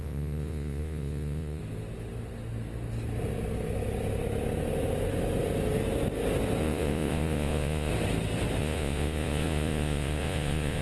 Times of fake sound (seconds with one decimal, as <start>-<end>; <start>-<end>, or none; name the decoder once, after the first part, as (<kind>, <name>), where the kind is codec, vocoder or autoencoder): 0.0-1.6 (vocoder, Vocos); 6.6-7.9; 8.6-10.8